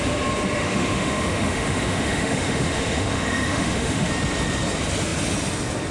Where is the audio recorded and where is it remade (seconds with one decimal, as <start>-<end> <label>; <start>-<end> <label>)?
0.0-0.6 recorded; 0.6-4.1 remade; 4.1-5.9 recorded